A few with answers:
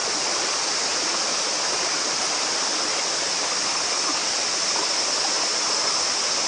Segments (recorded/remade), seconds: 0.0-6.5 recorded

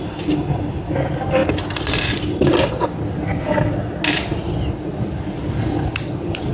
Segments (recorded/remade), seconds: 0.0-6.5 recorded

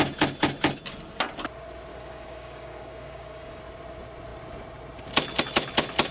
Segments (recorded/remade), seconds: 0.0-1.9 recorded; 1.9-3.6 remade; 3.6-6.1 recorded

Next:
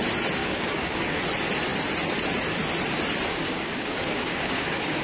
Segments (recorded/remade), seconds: 0.0-0.4 recorded; 0.4-1.2 remade; 1.2-3.3 recorded; 3.3-5.0 remade